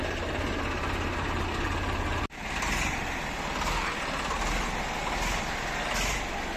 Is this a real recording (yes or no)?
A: yes